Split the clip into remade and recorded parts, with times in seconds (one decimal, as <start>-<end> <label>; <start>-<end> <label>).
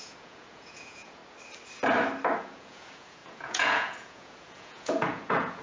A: 0.0-1.2 remade; 1.2-2.4 recorded; 2.4-5.6 remade